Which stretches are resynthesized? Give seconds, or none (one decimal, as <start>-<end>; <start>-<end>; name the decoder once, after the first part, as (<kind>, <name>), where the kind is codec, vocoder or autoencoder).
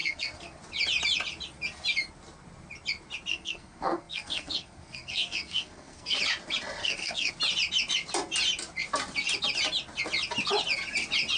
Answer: 0.0-0.6 (codec, SNAC); 3.3-6.2; 6.8-7.3